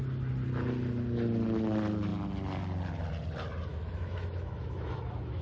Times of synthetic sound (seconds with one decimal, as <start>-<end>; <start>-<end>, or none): 3.7-5.4